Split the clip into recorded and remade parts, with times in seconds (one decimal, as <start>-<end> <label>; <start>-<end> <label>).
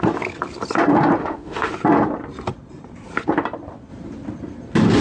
0.0-1.2 recorded; 1.2-1.7 remade; 1.7-5.0 recorded